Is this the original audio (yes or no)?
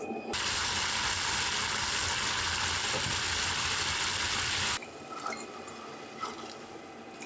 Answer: yes